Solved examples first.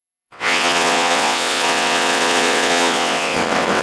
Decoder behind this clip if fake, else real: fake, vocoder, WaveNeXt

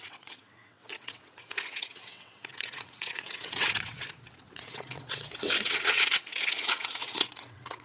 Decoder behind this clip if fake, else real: fake, vocoder, WaveNeXt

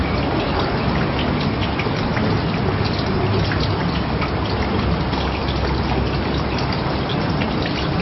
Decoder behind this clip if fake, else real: real